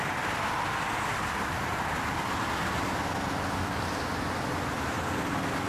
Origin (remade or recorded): recorded